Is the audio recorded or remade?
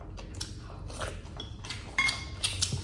recorded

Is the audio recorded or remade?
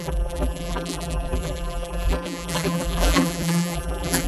remade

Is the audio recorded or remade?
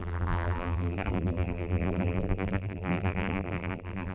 remade